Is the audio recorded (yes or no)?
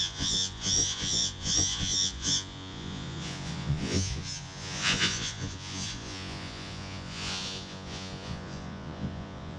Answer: no